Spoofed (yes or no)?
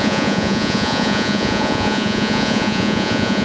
yes